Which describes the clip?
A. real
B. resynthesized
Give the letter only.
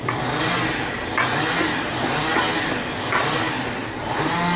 A